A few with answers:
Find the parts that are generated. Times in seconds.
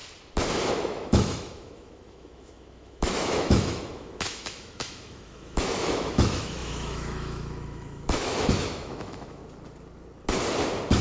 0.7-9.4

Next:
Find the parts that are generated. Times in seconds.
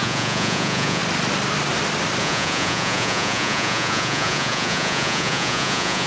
0.0-1.0; 2.2-6.1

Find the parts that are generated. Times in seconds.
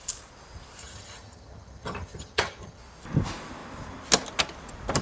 0.8-2.8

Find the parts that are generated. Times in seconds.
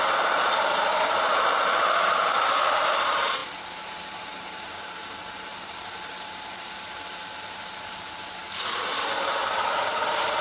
0.0-8.4; 8.9-10.4